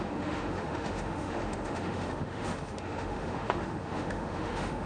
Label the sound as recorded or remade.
remade